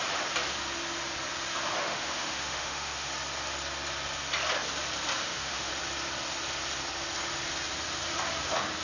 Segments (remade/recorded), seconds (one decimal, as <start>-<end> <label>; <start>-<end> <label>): 0.0-1.8 recorded; 1.8-3.1 remade; 3.1-5.2 recorded; 5.2-5.7 remade; 5.7-8.8 recorded